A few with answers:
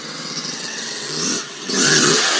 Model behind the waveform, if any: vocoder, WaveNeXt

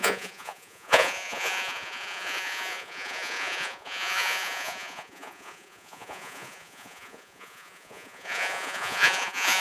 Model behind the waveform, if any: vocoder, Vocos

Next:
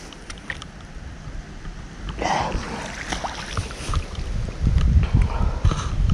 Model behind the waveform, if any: none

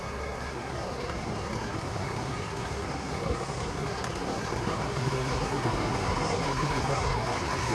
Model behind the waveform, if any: codec, SNAC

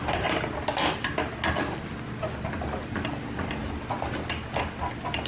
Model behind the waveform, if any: none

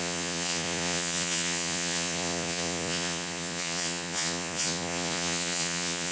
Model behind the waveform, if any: vocoder, Vocos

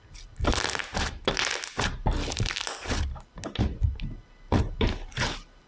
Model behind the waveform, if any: none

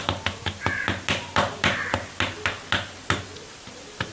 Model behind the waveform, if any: none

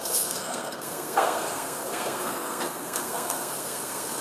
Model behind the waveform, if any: codec, SNAC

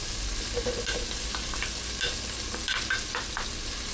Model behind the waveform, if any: none